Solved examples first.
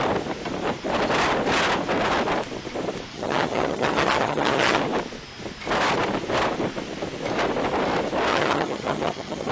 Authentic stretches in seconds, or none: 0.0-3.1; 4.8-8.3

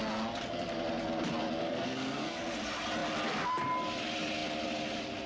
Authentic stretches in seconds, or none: 0.0-1.6; 2.4-5.3

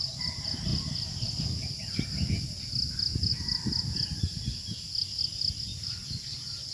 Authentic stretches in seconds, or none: 0.0-0.7; 2.3-6.7

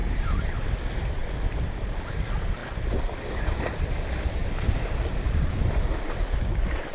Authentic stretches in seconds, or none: 0.6-4.4; 5.9-6.9

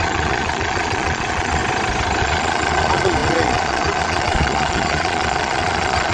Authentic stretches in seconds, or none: 1.6-2.2

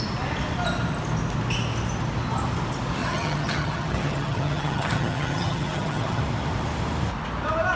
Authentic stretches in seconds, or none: 0.0-3.0; 6.2-7.8

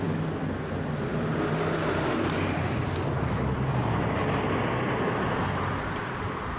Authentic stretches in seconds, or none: 0.0-6.6